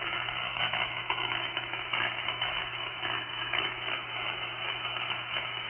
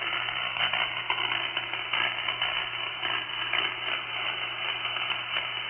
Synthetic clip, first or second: first